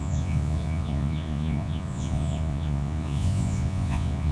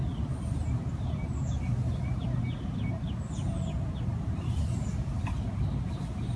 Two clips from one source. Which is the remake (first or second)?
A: first